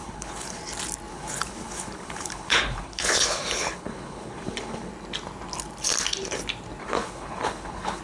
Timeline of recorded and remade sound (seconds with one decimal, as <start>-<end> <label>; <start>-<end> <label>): 0.0-0.6 remade; 0.6-1.1 recorded; 1.1-4.9 remade; 4.9-6.8 recorded; 6.8-8.0 remade